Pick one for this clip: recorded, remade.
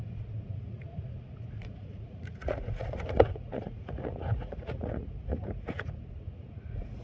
remade